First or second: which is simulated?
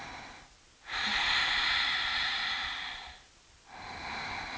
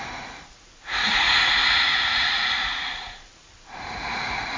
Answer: second